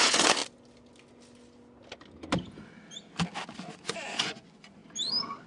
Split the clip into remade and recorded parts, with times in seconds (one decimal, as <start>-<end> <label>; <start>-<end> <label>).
0.0-0.4 remade; 0.4-3.7 recorded; 3.7-4.8 remade; 4.8-5.5 recorded